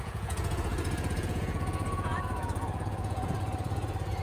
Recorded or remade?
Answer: remade